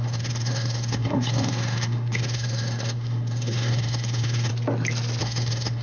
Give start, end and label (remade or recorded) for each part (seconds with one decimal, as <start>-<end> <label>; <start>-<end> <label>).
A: 0.0-4.5 remade; 4.5-5.2 recorded; 5.2-5.8 remade